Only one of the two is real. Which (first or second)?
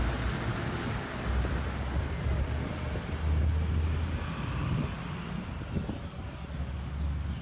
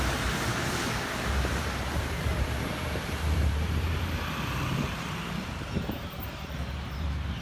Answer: first